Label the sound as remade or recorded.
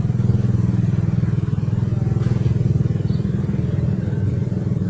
recorded